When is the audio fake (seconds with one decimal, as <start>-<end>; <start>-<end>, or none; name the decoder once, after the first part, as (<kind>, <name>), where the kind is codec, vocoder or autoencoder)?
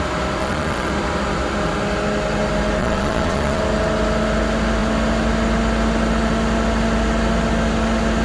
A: 0.4-0.9 (vocoder, Vocos); 2.8-3.6